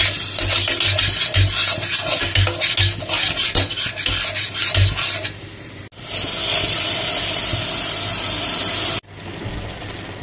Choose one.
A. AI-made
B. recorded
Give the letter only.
B